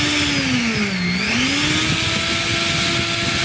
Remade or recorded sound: recorded